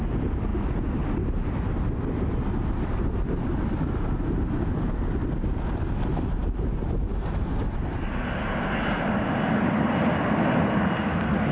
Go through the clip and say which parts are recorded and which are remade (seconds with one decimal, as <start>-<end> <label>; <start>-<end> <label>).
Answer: 0.0-11.5 recorded